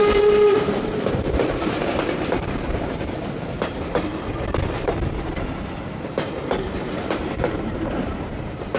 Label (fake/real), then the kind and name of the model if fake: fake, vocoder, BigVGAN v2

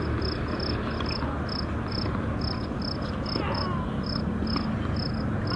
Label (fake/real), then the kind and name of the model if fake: real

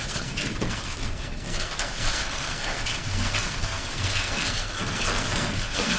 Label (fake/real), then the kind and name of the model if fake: fake, codec, SNAC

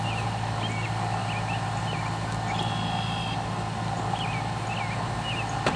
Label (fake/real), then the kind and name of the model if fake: real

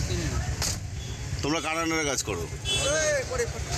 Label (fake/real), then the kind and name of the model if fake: real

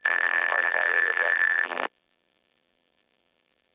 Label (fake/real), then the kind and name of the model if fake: fake, vocoder, BigVGAN v2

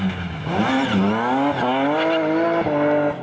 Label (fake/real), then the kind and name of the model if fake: real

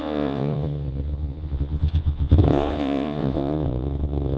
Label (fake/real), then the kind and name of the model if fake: fake, vocoder, Vocos